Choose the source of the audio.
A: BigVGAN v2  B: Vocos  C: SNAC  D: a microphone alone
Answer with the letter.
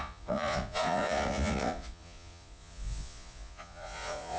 B